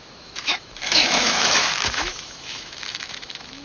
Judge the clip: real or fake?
fake